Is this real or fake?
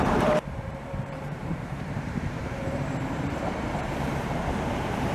fake